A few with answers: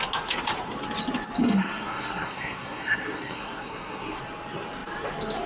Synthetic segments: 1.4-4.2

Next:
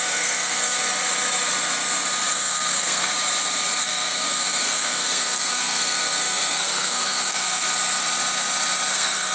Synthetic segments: 0.0-0.8; 2.3-3.1; 3.8-7.6; 8.9-9.3

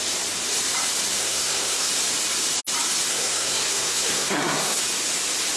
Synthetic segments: 1.2-1.9; 3.1-4.8

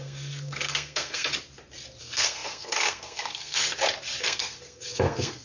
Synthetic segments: 0.0-1.3; 2.0-3.6; 4.2-5.4